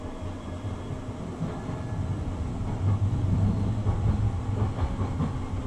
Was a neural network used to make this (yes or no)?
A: no